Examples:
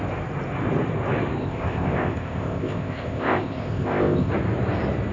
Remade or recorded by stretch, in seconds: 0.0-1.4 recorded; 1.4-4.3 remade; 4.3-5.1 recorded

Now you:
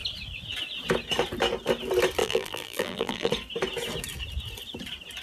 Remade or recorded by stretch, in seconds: 0.0-2.2 recorded; 2.2-3.3 remade; 3.3-5.2 recorded